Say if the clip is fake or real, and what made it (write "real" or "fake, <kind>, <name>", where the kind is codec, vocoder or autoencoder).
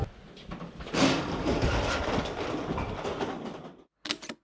real